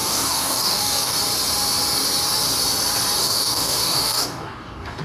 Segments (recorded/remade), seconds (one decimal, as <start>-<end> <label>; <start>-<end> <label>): 0.0-1.2 remade; 1.2-3.2 recorded; 3.2-5.0 remade